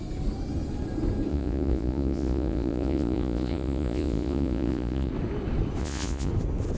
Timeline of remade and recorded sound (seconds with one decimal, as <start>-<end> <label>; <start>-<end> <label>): 0.0-1.3 recorded; 1.3-5.1 remade; 5.1-5.8 recorded; 5.8-6.3 remade; 6.3-6.8 recorded